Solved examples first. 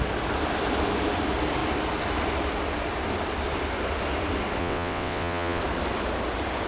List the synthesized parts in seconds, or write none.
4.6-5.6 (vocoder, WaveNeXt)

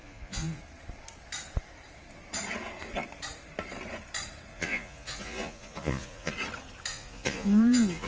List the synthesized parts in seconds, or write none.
0.0-0.6 (vocoder, Vocos); 4.5-6.3; 6.9-8.1

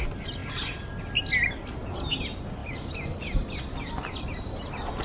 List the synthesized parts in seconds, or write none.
2.6-4.2 (vocoder, BigVGAN v2)

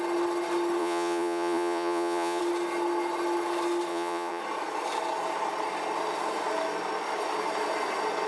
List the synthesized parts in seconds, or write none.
0.8-2.4 (vocoder, Vocos); 3.9-4.4

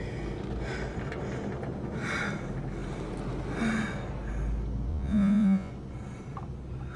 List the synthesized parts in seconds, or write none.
4.9-5.7 (vocoder, Vocos)

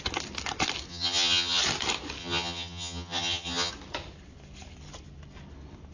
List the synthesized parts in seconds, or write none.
0.9-1.6 (vocoder, HiFi-GAN); 2.2-3.7

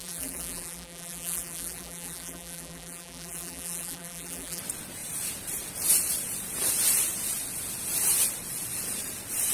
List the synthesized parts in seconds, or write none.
0.0-4.6 (vocoder, BigVGAN v2)

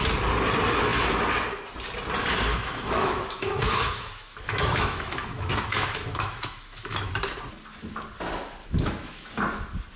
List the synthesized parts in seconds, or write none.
2.5-7.1 (autoencoder, DAC-VAE); 8.6-9.3